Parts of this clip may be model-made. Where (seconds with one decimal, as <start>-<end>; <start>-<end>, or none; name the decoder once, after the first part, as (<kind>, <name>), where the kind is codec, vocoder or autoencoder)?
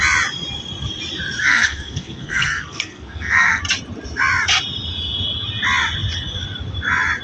1.4-3.6 (codec, SNAC)